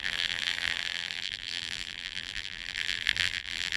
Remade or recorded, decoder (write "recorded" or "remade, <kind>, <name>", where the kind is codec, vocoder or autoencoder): remade, vocoder, BigVGAN v2